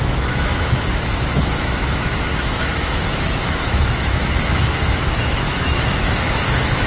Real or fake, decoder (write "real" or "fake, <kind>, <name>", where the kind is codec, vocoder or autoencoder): fake, autoencoder, DAC-VAE